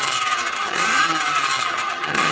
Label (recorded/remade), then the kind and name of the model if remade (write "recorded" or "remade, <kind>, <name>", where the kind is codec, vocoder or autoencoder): remade, vocoder, HiFi-GAN